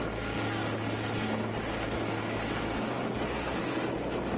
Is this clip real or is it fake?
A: real